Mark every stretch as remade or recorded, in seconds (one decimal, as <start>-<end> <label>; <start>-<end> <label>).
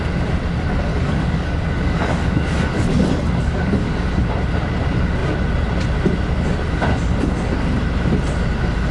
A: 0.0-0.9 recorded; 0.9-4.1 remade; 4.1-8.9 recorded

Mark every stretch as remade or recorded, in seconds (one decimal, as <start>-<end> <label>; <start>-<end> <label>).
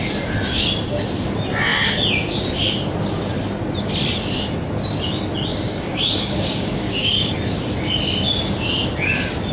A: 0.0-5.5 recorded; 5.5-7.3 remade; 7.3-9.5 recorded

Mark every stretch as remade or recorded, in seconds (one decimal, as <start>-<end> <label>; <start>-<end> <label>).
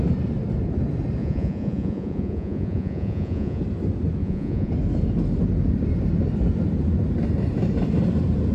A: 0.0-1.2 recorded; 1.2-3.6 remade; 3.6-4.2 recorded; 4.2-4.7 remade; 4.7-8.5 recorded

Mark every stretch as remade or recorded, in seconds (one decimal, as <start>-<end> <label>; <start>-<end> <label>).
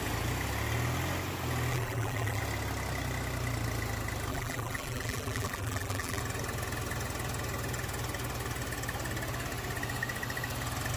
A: 0.0-1.7 recorded; 1.7-2.4 remade; 2.4-4.3 recorded; 4.3-6.2 remade; 6.2-11.0 recorded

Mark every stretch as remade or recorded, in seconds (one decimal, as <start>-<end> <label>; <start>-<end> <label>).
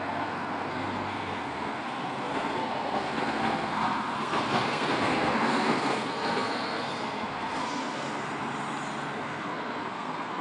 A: 0.0-8.2 remade; 8.2-9.1 recorded; 9.1-10.4 remade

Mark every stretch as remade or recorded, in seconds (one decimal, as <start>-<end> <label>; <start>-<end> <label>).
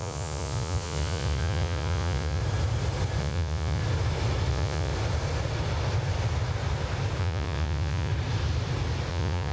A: 0.0-2.4 remade; 2.4-3.2 recorded; 3.2-3.8 remade; 3.8-4.5 recorded; 4.5-4.9 remade; 4.9-7.2 recorded; 7.2-8.1 remade; 8.1-9.1 recorded; 9.1-9.5 remade